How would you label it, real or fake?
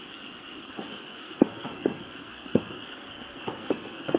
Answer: fake